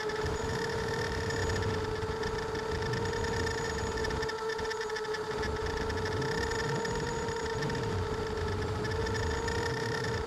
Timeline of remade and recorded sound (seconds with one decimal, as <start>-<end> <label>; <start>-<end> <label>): 0.0-1.4 remade; 1.4-3.5 recorded; 3.5-4.0 remade; 4.0-6.9 recorded; 6.9-9.0 remade; 9.0-9.7 recorded; 9.7-10.3 remade

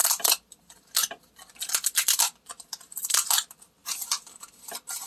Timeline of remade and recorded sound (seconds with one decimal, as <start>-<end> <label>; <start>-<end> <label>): 0.0-5.1 recorded